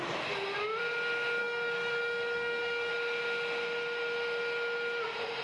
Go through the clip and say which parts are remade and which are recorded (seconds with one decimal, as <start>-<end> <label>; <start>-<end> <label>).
0.0-1.4 recorded; 1.4-2.9 remade; 2.9-5.4 recorded